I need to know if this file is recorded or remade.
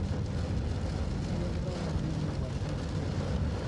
recorded